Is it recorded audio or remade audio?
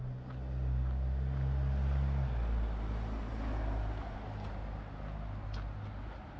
recorded